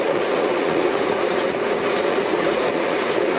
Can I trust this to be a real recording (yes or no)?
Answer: no